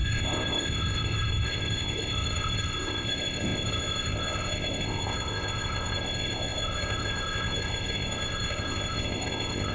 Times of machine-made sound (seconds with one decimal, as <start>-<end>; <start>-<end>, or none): 0.0-9.7